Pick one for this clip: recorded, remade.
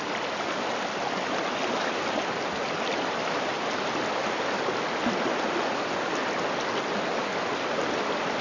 recorded